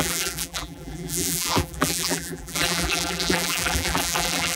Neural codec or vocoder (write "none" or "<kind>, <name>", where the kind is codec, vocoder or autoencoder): vocoder, BigVGAN v2